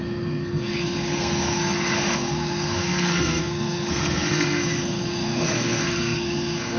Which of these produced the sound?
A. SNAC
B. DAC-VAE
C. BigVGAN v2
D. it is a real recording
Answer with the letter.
A